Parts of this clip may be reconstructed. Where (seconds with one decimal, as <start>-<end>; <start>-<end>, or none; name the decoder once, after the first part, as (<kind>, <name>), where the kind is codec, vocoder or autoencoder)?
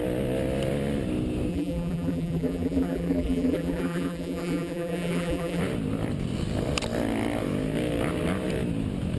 1.5-5.6 (vocoder, BigVGAN v2)